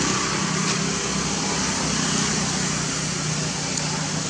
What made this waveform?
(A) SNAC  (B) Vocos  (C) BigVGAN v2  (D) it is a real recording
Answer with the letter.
D